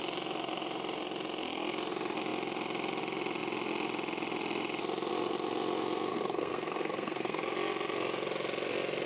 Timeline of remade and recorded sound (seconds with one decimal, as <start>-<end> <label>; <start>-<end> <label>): 0.0-6.1 recorded; 6.1-7.4 remade; 7.4-9.1 recorded